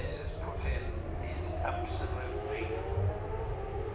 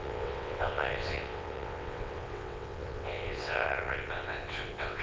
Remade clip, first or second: second